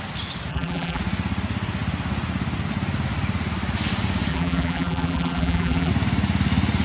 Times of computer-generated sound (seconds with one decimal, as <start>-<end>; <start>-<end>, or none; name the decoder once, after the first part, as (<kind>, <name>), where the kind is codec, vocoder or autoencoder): 0.5-1.0 (vocoder, BigVGAN v2); 4.3-5.9